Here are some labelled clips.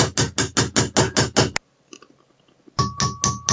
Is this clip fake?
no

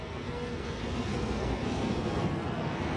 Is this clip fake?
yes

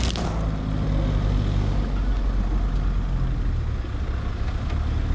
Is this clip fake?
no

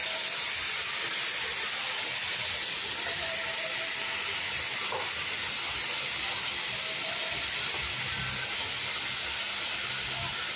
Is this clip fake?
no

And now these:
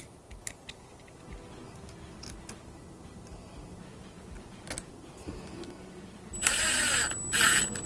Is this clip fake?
no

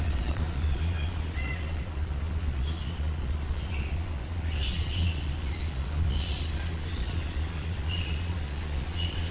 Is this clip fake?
yes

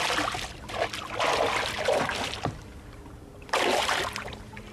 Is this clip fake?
no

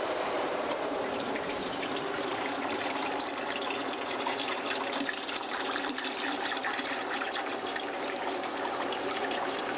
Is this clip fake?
yes